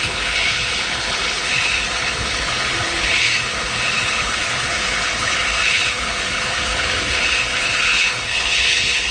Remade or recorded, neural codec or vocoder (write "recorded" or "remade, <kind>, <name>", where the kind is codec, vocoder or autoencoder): remade, codec, HILCodec